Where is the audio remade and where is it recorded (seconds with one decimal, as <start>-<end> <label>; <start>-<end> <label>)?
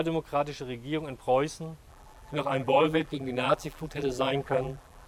0.0-1.9 recorded; 1.9-5.1 remade